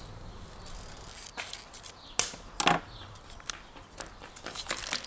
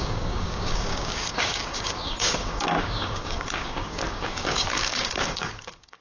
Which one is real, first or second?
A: first